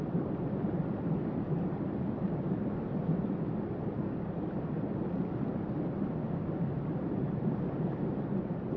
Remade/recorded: recorded